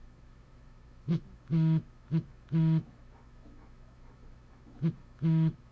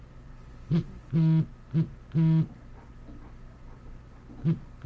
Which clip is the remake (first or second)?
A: first